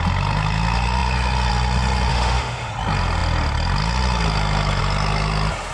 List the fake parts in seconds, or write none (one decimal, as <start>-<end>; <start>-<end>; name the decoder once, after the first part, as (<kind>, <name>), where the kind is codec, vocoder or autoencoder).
2.1-2.7 (autoencoder, DAC-VAE)